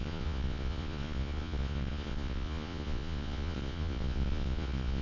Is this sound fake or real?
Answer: fake